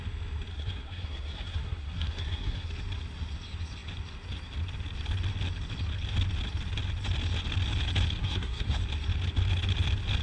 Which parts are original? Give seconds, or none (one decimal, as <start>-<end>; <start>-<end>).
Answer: 0.0-0.5; 2.7-8.2; 8.8-10.2